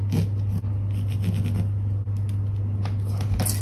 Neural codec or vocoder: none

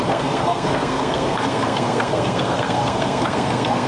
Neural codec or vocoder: codec, SNAC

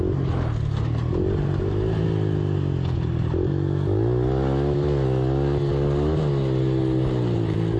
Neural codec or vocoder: none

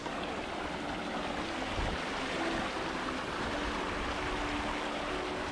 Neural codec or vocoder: none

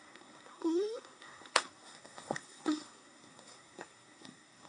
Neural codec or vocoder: codec, SNAC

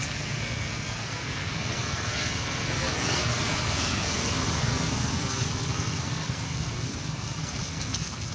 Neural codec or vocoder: codec, SNAC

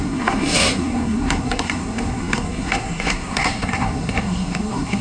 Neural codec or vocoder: codec, SNAC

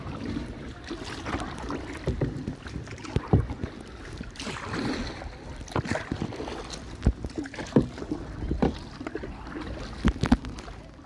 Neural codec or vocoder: none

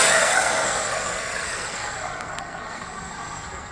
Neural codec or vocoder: codec, SNAC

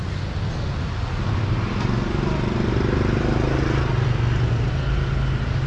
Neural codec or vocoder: none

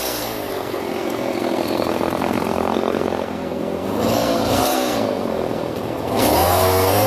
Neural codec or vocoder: codec, SNAC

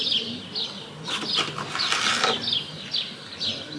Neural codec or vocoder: none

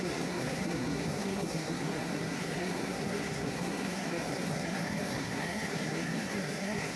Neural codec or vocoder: codec, SNAC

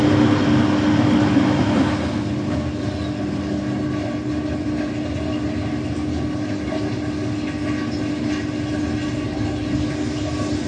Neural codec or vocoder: none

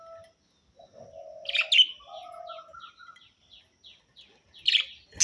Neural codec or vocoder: none